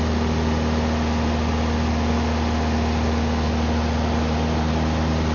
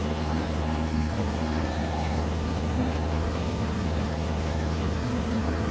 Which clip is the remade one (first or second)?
second